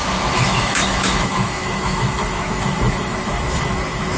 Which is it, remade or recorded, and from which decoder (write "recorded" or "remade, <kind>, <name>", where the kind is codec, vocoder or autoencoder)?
remade, autoencoder, DAC-VAE